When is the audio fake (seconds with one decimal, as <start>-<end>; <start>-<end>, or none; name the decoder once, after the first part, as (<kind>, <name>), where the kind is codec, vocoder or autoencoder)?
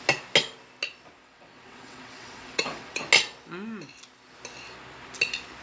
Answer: 1.2-3.0 (vocoder, WaveNeXt)